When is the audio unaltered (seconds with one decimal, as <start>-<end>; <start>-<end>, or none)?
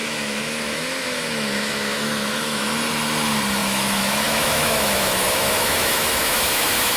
2.7-3.6